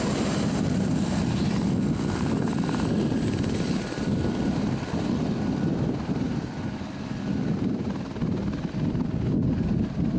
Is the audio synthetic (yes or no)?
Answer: no